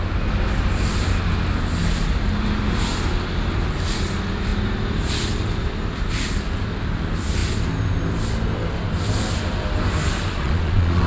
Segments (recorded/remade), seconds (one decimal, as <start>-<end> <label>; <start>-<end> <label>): 0.0-10.4 recorded; 10.4-11.1 remade